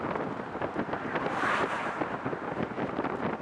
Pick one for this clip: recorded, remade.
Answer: recorded